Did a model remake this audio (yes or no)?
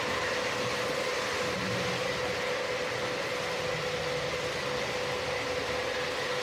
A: no